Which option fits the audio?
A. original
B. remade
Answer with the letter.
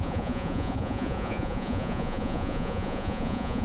B